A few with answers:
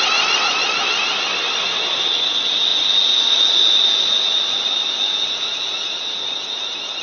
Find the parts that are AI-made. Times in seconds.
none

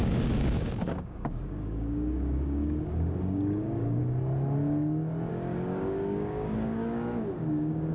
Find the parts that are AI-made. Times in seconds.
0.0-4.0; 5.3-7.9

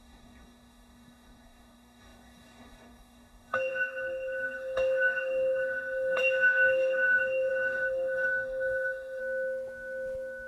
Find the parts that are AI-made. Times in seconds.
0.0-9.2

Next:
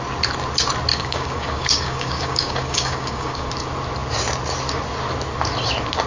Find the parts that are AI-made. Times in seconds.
0.9-3.5

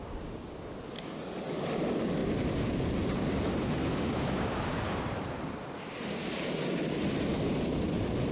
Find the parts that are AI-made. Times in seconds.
0.0-0.7; 3.8-5.0

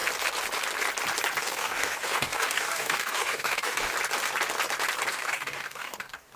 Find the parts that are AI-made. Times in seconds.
1.4-3.9; 5.1-6.4

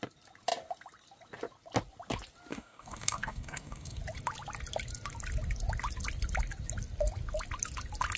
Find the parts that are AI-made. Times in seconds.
2.5-4.0

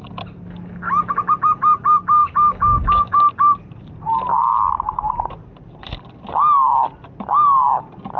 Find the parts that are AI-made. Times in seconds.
2.2-3.3